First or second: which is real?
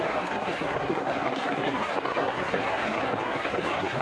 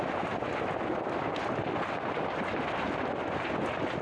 second